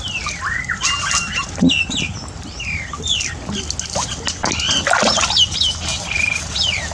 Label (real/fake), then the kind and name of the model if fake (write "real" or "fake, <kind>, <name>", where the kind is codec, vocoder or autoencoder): real